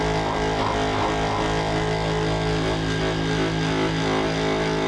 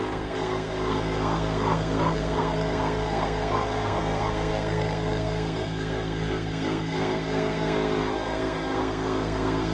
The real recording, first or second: first